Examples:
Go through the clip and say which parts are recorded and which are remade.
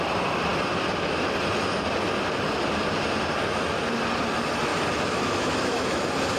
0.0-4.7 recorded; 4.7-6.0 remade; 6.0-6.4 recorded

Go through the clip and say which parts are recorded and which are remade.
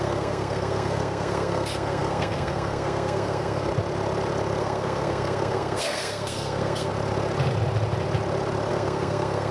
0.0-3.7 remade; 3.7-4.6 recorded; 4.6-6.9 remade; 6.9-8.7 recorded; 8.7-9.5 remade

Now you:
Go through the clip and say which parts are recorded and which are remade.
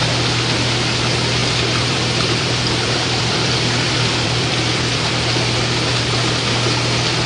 0.0-1.4 recorded; 1.4-5.1 remade; 5.1-7.3 recorded